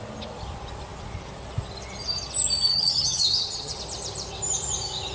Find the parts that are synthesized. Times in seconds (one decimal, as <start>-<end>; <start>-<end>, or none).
2.7-3.8